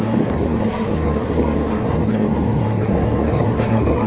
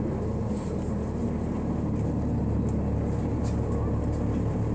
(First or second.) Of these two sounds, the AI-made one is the first